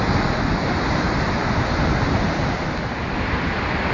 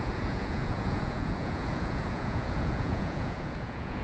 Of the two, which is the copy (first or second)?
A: second